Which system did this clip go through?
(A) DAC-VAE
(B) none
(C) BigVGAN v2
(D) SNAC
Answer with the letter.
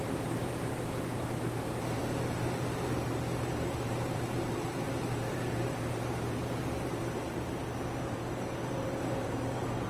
C